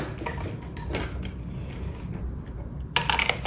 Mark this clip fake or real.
real